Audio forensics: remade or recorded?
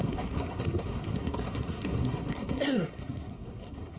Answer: remade